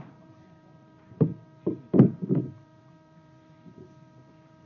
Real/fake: fake